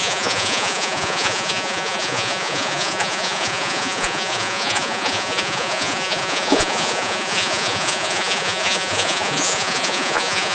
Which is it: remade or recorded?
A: remade